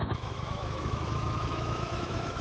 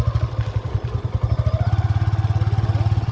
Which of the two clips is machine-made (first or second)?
first